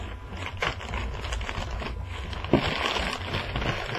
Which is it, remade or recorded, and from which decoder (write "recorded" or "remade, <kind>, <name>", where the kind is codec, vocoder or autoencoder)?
recorded